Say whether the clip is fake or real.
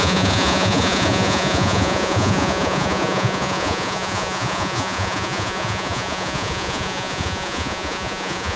fake